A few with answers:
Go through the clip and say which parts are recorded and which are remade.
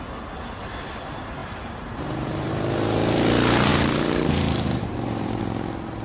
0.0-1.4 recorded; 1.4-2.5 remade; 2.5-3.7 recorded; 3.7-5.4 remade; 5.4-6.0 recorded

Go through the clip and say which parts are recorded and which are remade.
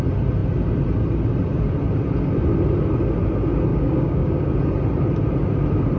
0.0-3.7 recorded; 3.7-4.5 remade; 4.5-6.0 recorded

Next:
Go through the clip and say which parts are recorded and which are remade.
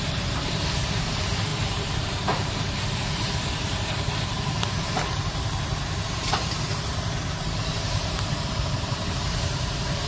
0.0-10.1 remade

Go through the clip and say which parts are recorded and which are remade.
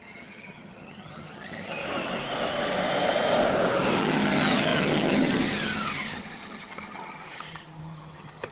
0.0-1.8 remade; 1.8-4.0 recorded; 4.0-8.5 remade